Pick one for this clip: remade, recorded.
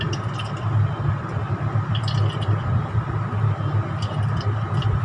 remade